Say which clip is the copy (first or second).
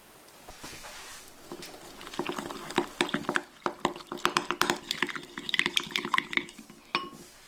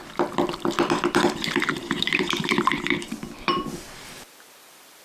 second